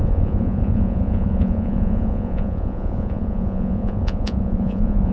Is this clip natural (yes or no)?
no